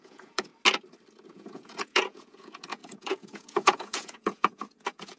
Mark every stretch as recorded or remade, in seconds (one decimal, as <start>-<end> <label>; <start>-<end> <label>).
0.0-0.5 remade; 0.5-1.3 recorded; 1.3-5.2 remade

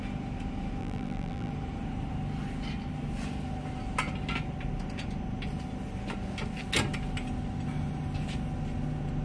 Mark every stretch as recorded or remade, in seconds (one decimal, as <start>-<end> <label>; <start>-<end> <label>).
0.0-0.8 recorded; 0.8-1.5 remade; 1.5-9.2 recorded

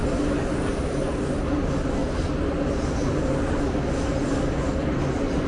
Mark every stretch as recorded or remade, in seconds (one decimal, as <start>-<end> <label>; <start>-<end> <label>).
0.0-5.5 recorded

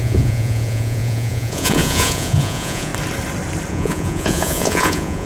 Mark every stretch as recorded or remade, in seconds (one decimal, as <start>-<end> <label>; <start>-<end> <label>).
0.0-2.9 remade; 2.9-3.7 recorded; 3.7-5.3 remade

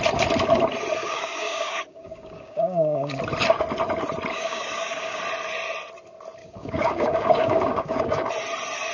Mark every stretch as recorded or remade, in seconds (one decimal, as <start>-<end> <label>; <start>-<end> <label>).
0.0-1.0 recorded; 1.0-3.2 remade; 3.2-4.3 recorded; 4.3-5.2 remade; 5.2-6.4 recorded; 6.4-8.3 remade; 8.3-8.9 recorded

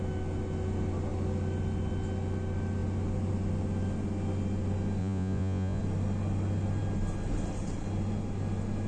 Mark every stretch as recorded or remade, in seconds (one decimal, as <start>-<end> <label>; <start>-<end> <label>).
0.0-5.0 recorded; 5.0-5.8 remade; 5.8-8.9 recorded

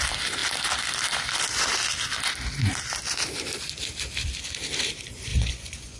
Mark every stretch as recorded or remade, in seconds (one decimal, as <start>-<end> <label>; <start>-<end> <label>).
0.0-5.3 recorded; 5.3-6.0 remade